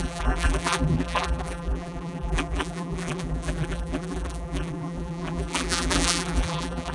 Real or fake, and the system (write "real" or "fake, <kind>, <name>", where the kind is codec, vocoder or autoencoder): fake, vocoder, BigVGAN v2